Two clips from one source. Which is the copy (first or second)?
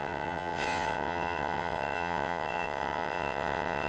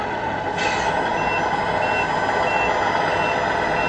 first